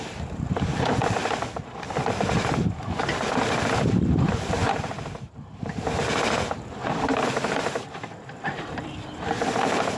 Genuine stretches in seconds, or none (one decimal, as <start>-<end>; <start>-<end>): 1.0-3.0